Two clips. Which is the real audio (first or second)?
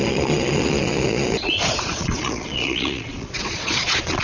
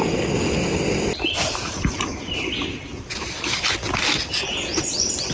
second